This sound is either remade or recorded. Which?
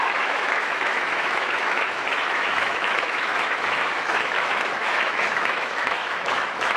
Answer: remade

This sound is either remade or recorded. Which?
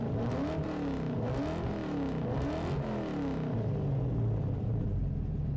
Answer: recorded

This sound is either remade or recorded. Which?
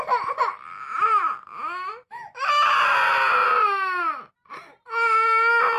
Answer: recorded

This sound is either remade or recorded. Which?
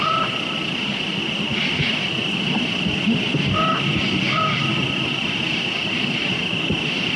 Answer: recorded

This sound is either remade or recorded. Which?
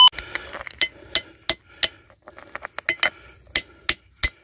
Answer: recorded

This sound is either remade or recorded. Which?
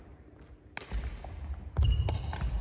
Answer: recorded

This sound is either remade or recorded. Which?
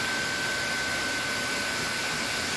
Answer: recorded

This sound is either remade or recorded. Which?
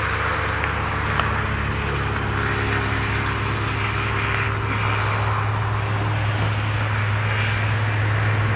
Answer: recorded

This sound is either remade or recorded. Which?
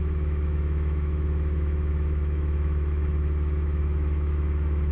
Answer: remade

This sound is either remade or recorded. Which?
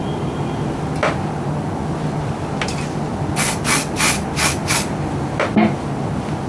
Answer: recorded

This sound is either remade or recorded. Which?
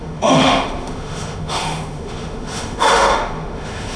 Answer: remade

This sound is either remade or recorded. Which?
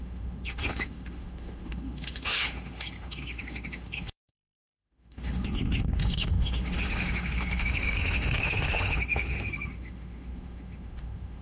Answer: remade